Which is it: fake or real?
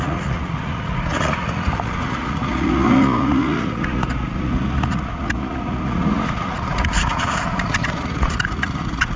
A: fake